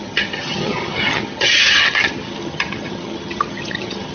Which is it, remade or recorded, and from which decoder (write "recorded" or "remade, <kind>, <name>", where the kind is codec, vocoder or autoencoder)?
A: remade, vocoder, HiFi-GAN